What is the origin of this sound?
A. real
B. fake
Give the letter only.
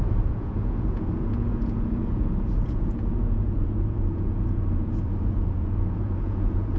B